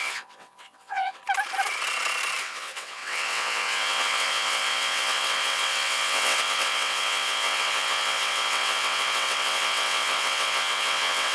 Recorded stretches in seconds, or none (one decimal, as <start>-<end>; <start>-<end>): 1.2-2.4